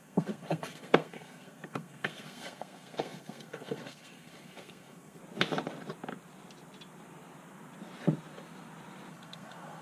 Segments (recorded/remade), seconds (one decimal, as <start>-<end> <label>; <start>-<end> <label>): 0.0-5.2 remade; 5.2-9.1 recorded; 9.1-9.8 remade